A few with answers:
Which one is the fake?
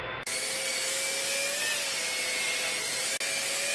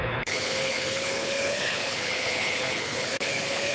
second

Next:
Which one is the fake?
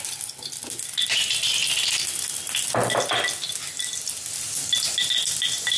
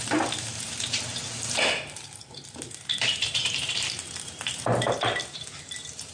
second